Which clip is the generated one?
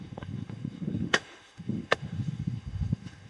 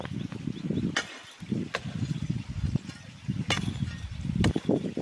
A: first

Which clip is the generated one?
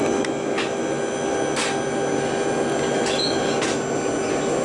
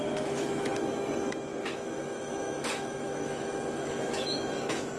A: second